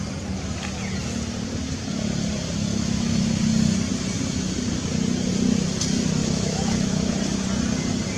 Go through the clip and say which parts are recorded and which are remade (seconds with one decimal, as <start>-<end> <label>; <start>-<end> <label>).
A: 0.0-2.7 recorded; 2.7-3.4 remade; 3.4-6.2 recorded; 6.2-7.1 remade; 7.1-8.2 recorded